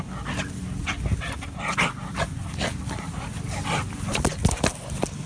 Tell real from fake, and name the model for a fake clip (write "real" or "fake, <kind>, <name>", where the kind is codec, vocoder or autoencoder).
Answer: real